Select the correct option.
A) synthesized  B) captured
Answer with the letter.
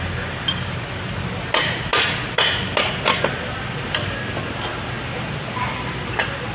B